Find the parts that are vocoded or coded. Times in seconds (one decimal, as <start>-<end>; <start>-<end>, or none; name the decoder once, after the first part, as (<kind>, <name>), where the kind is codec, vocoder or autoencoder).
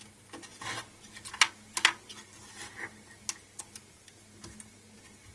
none